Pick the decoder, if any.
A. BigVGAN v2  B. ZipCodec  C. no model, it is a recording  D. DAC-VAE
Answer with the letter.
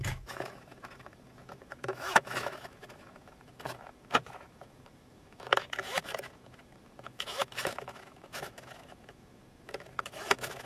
D